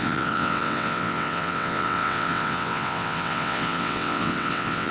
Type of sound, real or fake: fake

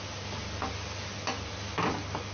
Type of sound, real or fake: real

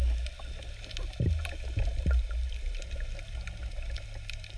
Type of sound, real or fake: real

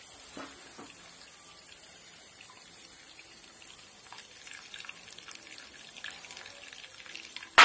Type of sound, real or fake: real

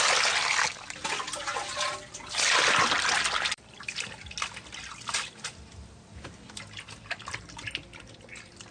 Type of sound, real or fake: real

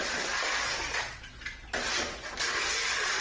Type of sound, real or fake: real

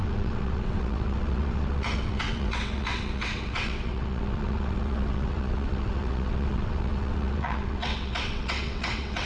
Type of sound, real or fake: fake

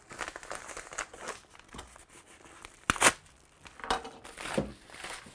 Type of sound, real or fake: real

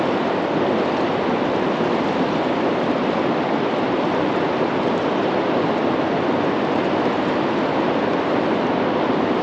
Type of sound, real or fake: real